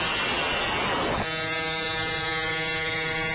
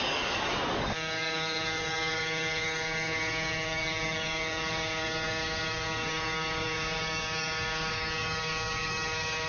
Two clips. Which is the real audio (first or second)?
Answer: first